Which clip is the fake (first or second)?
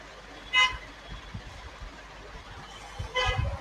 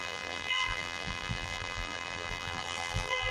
second